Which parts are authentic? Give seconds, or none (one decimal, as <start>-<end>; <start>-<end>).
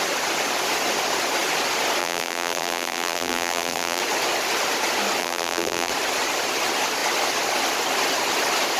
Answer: 0.0-2.0; 4.0-5.2; 5.9-8.8